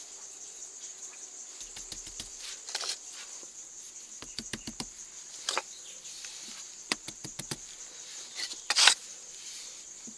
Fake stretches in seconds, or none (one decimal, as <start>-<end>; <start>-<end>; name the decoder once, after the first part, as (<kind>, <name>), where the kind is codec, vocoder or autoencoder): 0.0-0.9 (vocoder, BigVGAN v2); 2.1-10.2